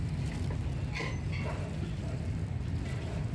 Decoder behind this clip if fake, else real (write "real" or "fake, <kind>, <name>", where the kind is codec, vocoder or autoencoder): real